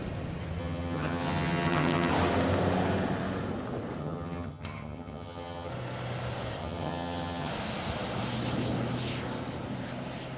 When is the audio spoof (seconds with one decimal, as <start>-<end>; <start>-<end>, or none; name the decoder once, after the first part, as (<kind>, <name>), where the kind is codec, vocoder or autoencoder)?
0.6-2.1 (vocoder, HiFi-GAN); 4.0-5.7; 6.6-7.5